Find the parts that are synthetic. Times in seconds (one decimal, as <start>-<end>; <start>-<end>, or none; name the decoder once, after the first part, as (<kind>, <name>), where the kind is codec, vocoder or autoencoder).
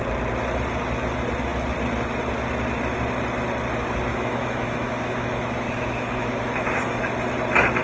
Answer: 4.1-7.1 (autoencoder, DAC-VAE)